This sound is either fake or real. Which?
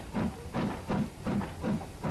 real